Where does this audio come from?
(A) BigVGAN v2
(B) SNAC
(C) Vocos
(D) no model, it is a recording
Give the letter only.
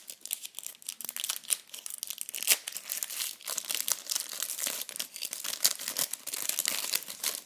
D